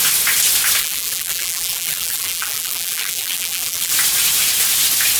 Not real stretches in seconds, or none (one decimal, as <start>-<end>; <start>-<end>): 0.8-3.9